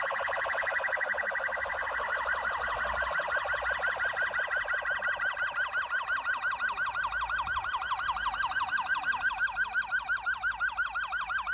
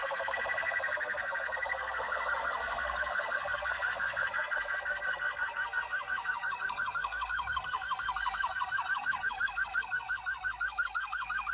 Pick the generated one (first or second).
second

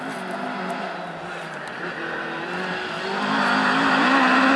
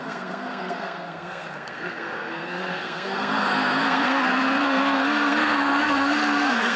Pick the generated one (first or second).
second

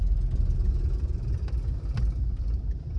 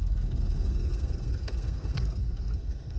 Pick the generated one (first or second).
second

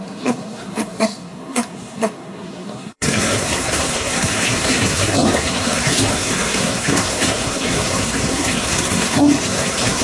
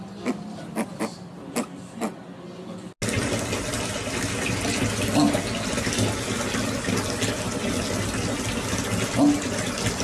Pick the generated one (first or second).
first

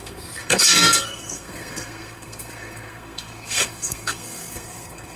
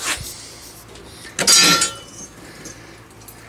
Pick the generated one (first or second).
first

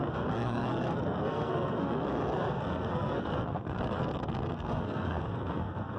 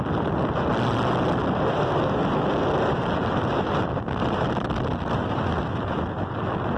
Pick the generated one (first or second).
first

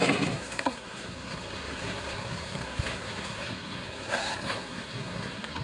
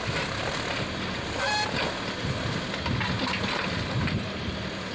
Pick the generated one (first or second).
first